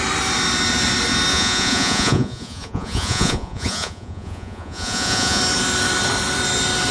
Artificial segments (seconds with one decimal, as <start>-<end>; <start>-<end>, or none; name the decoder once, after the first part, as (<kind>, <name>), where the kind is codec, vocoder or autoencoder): 1.3-5.4 (vocoder, Vocos)